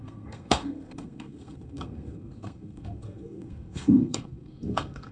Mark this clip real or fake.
fake